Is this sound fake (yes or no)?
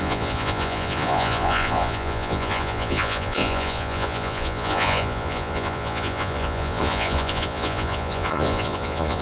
yes